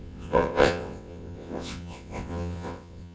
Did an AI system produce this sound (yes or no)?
yes